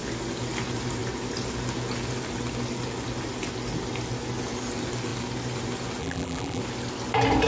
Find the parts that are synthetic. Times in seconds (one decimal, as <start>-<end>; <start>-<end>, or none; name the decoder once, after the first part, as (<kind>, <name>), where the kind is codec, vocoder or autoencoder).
6.0-6.6 (vocoder, BigVGAN v2)